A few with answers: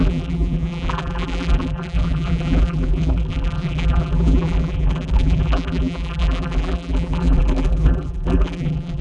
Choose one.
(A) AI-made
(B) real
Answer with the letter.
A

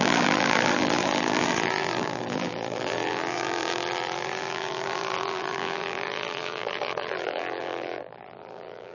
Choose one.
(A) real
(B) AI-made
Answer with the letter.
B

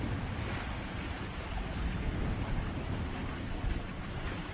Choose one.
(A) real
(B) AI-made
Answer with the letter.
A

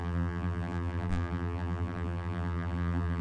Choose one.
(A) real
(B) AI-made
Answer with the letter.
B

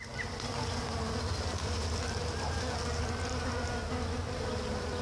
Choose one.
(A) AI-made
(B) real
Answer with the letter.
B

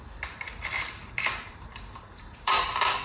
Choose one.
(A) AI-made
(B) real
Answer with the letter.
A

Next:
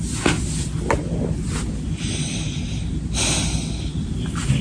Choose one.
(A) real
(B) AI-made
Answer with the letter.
A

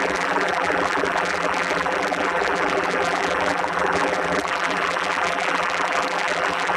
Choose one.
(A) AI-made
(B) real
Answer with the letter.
A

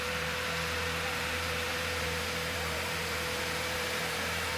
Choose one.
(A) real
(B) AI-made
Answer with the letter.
B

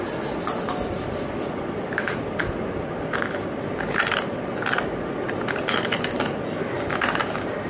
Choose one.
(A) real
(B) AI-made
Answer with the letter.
A